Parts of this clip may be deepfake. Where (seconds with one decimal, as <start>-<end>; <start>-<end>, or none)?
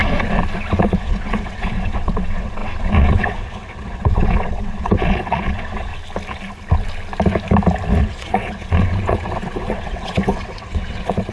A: 0.8-5.9; 8.0-11.3